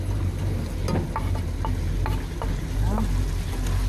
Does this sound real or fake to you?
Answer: real